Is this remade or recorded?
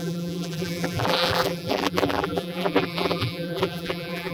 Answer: remade